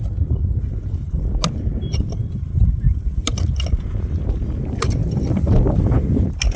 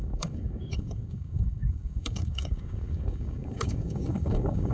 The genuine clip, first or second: first